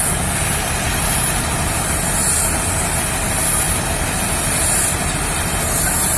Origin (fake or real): real